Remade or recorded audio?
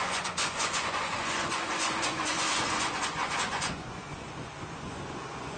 remade